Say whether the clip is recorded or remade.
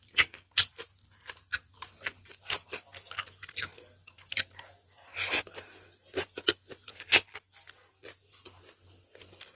recorded